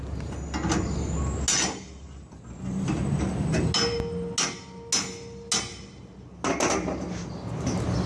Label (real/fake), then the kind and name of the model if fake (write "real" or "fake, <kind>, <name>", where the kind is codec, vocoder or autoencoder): real